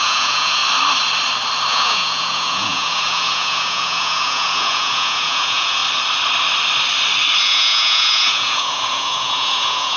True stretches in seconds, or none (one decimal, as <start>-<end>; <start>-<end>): 0.6-1.7; 5.8-7.4